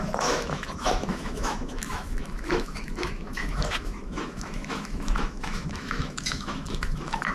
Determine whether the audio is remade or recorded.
remade